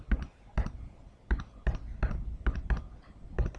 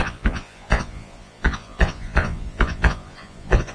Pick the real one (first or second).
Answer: first